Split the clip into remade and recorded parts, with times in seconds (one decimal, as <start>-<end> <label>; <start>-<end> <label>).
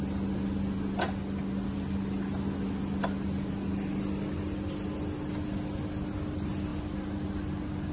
0.0-7.9 recorded